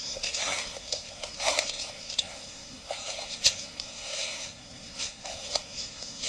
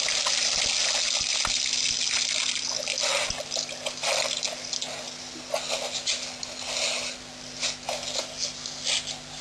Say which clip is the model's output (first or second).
first